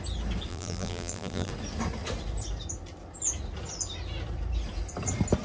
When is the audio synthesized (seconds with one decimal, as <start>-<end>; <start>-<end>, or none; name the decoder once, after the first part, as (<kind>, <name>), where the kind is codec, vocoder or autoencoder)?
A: 0.5-1.5 (vocoder, BigVGAN v2)